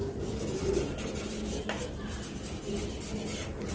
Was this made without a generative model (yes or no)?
yes